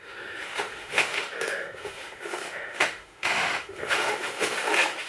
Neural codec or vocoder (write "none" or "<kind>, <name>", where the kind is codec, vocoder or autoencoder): autoencoder, DAC-VAE